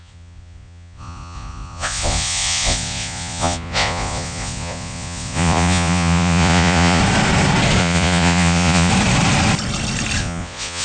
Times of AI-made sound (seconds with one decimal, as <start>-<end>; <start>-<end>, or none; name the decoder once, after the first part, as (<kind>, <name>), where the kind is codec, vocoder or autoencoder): 0.0-7.0 (vocoder, Vocos); 7.8-8.9; 10.2-10.8